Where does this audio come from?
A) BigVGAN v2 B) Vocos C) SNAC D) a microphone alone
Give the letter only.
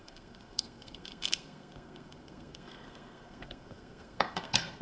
C